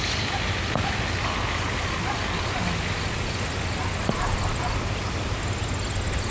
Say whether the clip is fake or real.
real